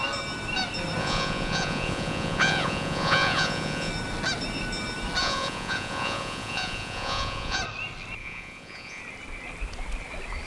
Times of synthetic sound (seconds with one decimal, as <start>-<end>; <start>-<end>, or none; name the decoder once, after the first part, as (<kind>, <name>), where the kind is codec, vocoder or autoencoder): 1.0-3.9 (vocoder, Vocos); 5.2-7.6; 8.2-9.0